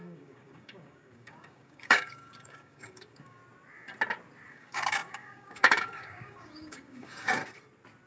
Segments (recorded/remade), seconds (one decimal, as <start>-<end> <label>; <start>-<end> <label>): 0.0-3.4 remade; 3.4-4.5 recorded; 4.5-7.4 remade; 7.4-8.1 recorded